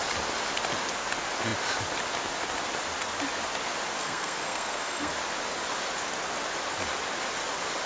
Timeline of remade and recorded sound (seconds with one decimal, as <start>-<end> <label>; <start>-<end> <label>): 0.0-4.0 recorded; 4.0-5.1 remade; 5.1-7.9 recorded